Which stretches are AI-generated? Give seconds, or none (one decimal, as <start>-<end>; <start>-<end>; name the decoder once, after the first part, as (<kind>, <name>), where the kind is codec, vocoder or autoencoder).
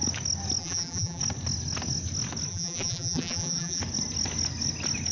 0.6-1.2 (vocoder, BigVGAN v2); 2.5-3.8